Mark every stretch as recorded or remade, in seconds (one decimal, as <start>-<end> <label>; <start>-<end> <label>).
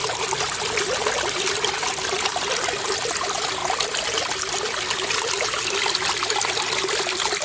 0.0-7.4 recorded